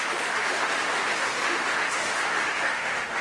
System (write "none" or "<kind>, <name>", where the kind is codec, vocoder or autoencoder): autoencoder, DAC-VAE